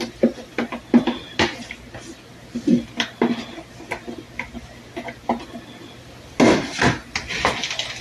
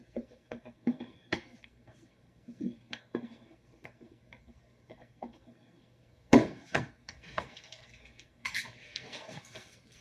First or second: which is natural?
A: first